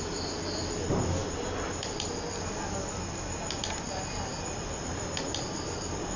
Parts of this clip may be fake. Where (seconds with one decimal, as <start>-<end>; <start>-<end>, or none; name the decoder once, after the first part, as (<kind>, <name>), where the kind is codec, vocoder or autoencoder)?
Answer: none